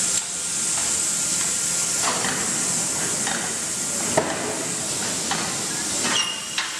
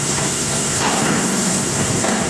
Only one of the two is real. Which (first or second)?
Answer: first